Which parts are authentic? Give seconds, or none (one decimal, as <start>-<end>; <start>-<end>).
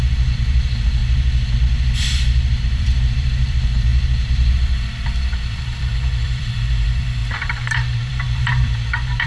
1.0-2.0